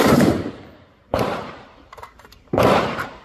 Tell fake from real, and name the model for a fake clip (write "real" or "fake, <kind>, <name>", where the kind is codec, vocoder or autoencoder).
fake, vocoder, BigVGAN v2